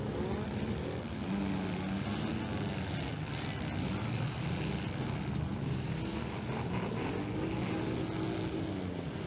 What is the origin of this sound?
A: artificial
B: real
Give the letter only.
B